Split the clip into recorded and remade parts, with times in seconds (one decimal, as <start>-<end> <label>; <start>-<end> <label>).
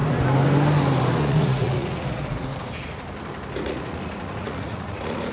0.0-1.2 recorded; 1.2-2.5 remade; 2.5-3.6 recorded; 3.6-5.3 remade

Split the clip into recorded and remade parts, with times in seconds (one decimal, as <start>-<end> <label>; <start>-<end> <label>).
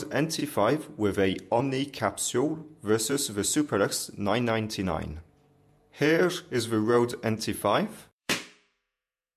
0.0-9.4 remade